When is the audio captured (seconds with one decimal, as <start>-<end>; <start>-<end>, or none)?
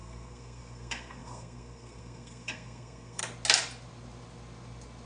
3.2-5.1